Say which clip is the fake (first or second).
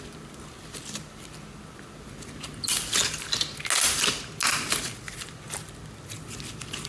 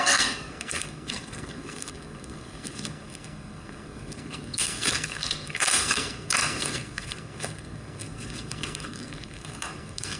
second